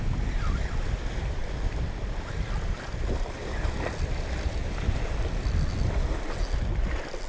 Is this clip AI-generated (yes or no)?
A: no